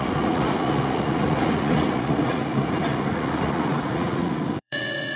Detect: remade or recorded remade